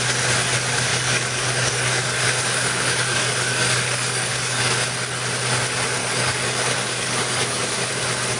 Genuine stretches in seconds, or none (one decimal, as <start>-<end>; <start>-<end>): 0.0-0.9; 4.6-6.0; 7.9-8.4